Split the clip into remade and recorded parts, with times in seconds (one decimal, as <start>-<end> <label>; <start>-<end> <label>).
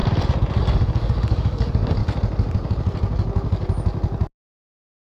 0.0-0.6 recorded; 0.6-2.0 remade; 2.0-5.1 recorded